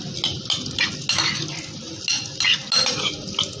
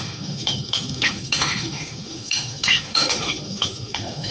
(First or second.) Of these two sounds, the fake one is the second